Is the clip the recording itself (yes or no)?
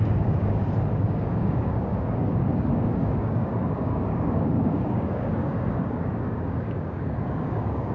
no